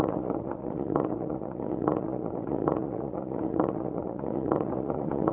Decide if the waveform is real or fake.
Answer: fake